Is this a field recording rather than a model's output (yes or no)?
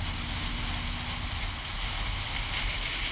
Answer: yes